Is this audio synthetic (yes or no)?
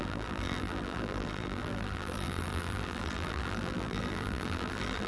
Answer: yes